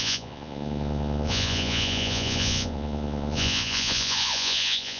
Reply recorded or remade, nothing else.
remade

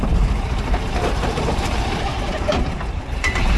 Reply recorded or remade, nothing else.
remade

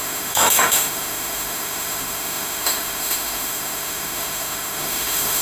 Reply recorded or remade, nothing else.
remade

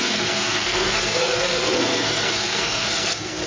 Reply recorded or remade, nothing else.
remade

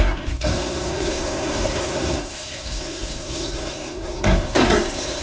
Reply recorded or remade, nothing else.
remade